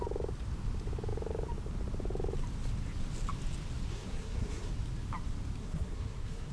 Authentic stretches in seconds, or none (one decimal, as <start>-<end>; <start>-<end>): 0.0-3.9; 4.7-5.6